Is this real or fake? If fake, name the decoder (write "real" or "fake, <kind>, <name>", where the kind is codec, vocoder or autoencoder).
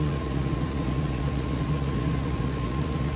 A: fake, vocoder, Vocos